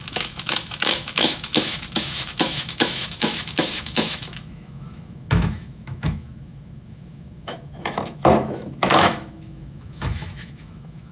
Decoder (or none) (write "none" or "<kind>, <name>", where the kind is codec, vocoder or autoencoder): autoencoder, DAC-VAE